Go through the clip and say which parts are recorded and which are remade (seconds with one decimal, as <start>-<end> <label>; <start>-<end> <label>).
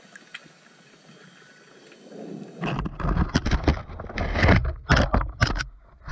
0.0-0.4 remade; 0.4-4.1 recorded; 4.1-4.6 remade; 4.6-6.1 recorded